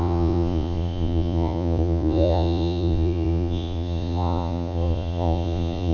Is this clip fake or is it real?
fake